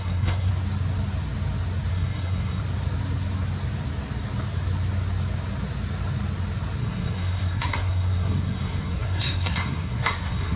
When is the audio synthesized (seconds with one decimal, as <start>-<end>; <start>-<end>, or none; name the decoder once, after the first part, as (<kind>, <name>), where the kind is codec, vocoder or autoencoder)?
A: 0.0-0.5 (codec, SNAC); 1.9-2.6; 6.8-10.6